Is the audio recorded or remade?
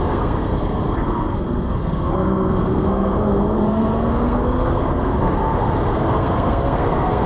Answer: remade